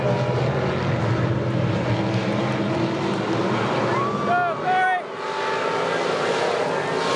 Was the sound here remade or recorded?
recorded